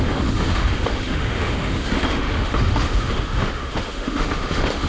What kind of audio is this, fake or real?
fake